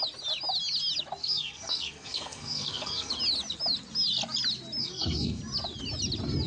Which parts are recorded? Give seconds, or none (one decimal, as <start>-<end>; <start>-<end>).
0.0-1.2; 3.1-4.8; 5.4-6.5